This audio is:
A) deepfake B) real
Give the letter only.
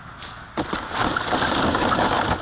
B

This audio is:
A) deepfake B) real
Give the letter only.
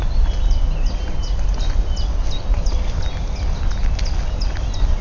B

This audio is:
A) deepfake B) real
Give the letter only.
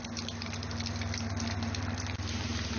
B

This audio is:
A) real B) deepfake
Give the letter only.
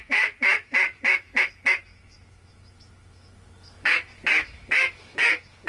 B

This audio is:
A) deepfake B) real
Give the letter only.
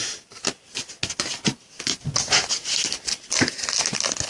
B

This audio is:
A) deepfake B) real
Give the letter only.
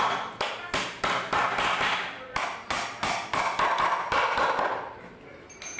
B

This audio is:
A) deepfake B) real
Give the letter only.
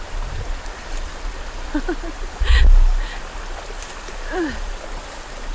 B